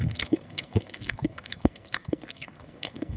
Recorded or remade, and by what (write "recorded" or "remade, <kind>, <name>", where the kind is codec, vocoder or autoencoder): remade, codec, SNAC